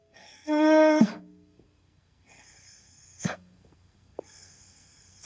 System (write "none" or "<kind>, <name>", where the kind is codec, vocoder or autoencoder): codec, SNAC